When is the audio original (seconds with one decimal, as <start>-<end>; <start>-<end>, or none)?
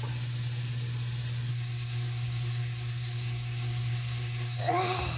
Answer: 0.0-1.5; 4.6-5.2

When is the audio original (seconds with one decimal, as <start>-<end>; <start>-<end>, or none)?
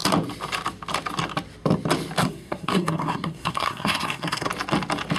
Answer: 0.0-2.2; 4.5-5.2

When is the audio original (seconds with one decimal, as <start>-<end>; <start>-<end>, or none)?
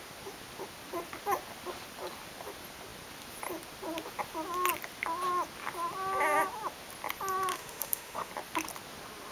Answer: 0.0-7.5; 8.3-9.3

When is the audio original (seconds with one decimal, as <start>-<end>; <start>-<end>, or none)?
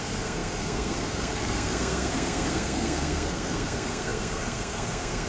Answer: none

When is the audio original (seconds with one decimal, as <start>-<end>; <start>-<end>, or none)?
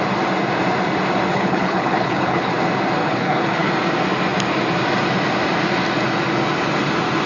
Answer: 0.0-1.3; 2.5-3.0; 3.7-7.3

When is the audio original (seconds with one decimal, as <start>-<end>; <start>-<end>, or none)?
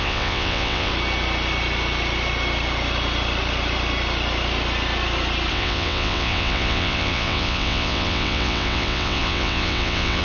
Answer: 0.9-5.5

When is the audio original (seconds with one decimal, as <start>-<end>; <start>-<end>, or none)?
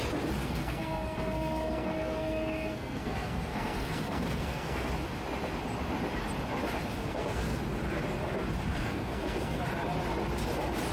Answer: 0.0-0.4; 4.9-7.0; 7.6-8.7; 9.6-10.9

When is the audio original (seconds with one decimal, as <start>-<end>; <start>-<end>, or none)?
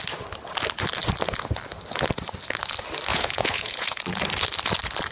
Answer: 0.0-3.1; 4.0-5.1